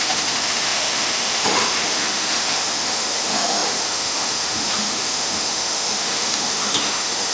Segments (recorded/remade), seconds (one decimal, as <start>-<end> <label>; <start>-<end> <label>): 0.0-7.3 remade